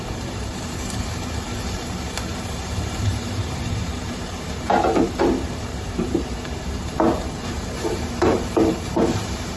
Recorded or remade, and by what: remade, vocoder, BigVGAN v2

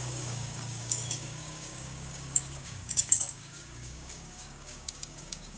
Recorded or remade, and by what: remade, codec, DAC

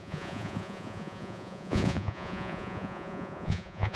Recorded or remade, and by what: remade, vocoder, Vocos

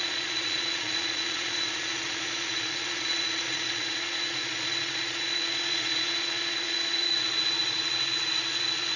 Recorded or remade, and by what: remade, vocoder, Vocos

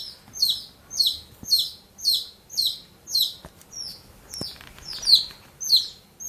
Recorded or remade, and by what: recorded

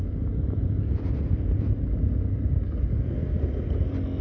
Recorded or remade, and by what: recorded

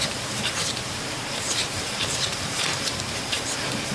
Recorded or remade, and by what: remade, vocoder, BigVGAN v2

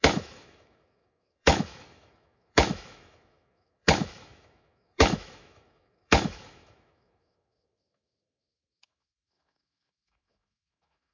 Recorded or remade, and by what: remade, autoencoder, DAC-VAE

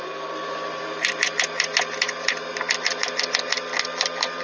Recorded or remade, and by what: recorded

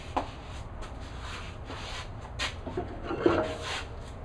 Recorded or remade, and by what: recorded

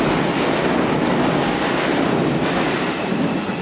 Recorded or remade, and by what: recorded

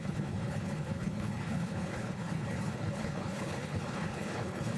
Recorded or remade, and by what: remade, codec, HILCodec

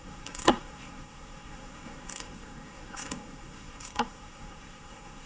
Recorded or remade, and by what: remade, codec, SNAC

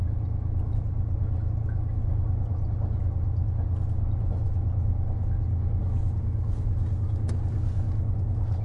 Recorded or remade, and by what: recorded